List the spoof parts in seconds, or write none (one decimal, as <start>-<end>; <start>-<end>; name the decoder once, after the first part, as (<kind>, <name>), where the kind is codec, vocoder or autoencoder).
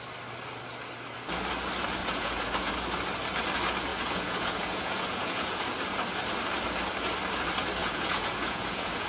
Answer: 2.0-2.7 (vocoder, Vocos); 3.9-5.6; 7.8-9.1